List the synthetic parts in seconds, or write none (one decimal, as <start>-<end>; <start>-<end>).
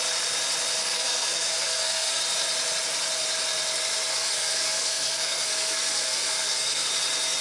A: 0.8-2.2; 4.1-6.9